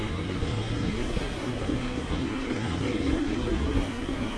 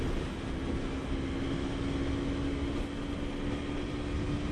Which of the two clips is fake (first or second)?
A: first